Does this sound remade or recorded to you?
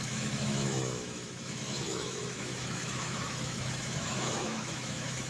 remade